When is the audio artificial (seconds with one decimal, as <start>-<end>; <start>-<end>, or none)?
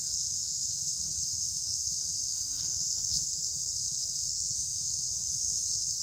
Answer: 0.0-6.0